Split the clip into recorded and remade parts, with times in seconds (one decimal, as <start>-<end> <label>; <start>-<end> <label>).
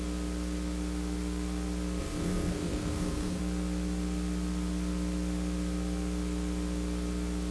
0.0-2.0 recorded; 2.0-3.4 remade; 3.4-7.5 recorded